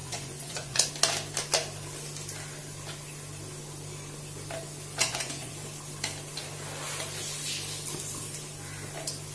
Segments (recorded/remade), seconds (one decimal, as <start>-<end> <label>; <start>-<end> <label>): 0.0-0.9 remade; 0.9-5.0 recorded; 5.0-5.5 remade; 5.5-9.3 recorded